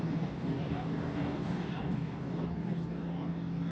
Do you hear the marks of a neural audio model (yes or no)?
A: yes